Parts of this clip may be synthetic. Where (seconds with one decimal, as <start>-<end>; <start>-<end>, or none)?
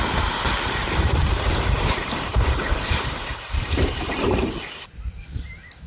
0.8-4.3